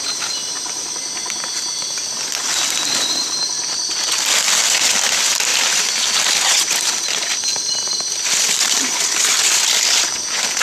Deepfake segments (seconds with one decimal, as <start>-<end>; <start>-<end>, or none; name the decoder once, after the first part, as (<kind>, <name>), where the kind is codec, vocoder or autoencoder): none